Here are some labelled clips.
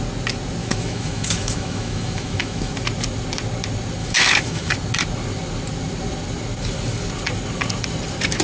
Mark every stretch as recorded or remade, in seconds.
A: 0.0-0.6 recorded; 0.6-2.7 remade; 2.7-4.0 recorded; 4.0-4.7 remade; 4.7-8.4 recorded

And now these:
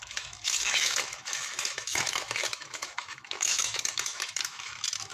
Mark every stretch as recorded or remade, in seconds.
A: 0.0-5.1 remade